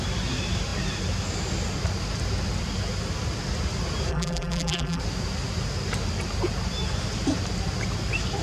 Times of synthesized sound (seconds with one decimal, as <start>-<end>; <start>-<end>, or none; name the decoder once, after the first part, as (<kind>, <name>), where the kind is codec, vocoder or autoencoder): 4.1-5.0 (vocoder, BigVGAN v2)